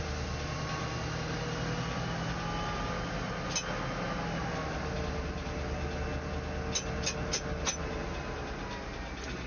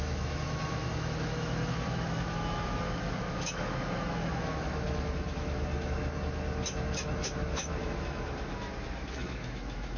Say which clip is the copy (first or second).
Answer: second